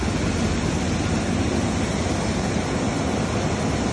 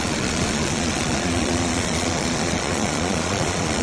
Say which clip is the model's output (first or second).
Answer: second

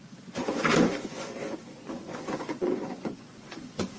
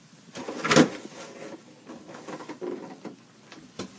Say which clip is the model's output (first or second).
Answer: first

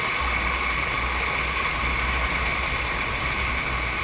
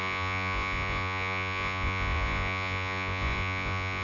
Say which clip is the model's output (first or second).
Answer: second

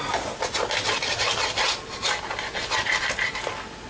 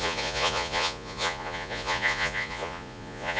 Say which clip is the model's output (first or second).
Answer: second